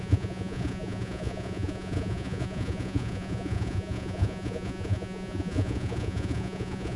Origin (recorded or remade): remade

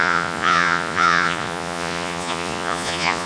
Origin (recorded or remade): remade